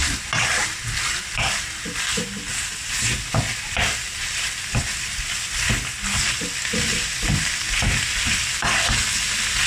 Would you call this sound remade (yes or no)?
no